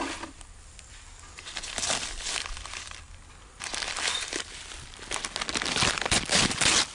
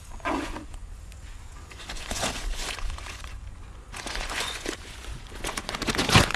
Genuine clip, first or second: first